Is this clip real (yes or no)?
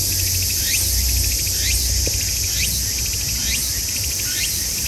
yes